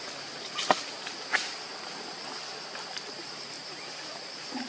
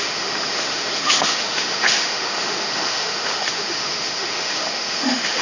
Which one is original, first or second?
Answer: first